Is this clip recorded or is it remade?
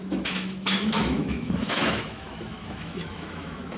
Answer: remade